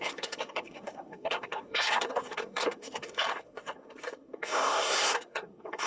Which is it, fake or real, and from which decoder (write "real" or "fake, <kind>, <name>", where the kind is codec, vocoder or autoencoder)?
fake, codec, SNAC